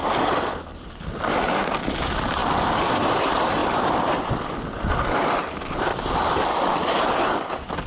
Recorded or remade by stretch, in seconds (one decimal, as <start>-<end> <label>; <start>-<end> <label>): 0.0-7.9 recorded